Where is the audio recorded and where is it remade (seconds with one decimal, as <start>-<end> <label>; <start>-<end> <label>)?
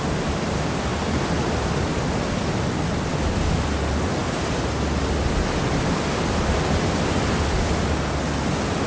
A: 0.0-8.9 recorded